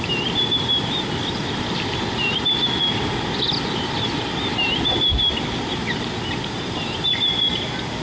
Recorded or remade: recorded